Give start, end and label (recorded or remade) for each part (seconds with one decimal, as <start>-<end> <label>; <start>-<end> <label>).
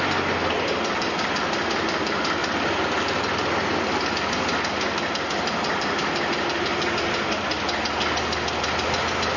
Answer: 0.0-9.4 recorded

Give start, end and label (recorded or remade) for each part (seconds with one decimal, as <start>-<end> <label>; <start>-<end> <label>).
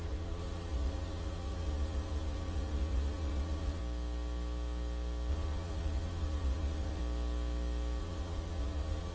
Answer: 0.0-3.8 remade; 3.8-5.3 recorded; 5.3-7.0 remade; 7.0-8.0 recorded; 8.0-9.1 remade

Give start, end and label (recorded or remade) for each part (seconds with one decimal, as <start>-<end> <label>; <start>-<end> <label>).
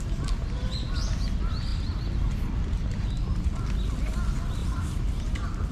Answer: 0.0-4.6 recorded; 4.6-5.7 remade